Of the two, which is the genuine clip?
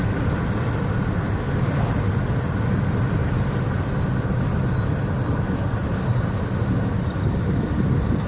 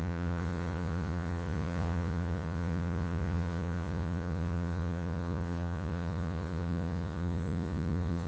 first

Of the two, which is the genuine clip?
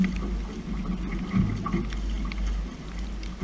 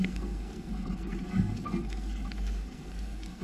first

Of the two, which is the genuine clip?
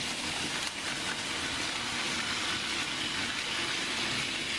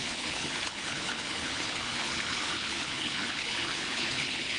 first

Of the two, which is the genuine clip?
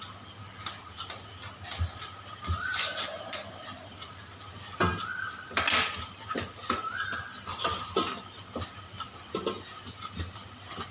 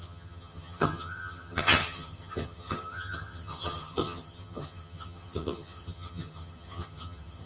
first